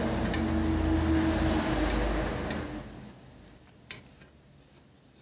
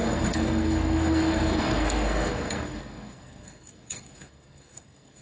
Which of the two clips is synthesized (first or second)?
second